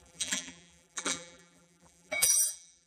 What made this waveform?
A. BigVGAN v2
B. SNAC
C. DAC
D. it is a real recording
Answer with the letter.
A